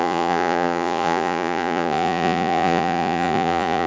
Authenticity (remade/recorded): remade